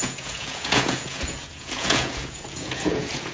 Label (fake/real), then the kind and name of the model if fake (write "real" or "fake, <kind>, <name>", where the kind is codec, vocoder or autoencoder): fake, vocoder, Vocos